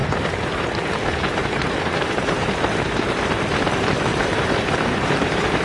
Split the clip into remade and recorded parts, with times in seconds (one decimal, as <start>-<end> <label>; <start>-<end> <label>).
0.0-3.2 remade; 3.2-4.1 recorded; 4.1-5.6 remade